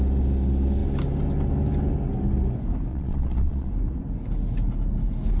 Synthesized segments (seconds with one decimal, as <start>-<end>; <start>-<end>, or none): 2.9-3.7